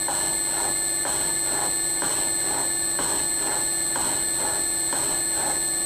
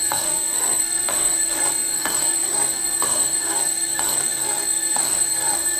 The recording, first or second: first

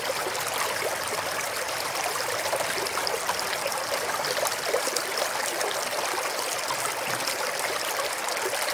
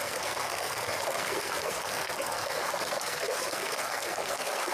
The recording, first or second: first